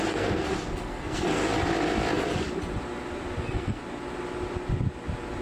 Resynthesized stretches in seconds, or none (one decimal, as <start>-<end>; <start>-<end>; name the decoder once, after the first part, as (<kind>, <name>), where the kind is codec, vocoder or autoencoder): 0.0-1.4 (codec, SNAC); 3.4-3.8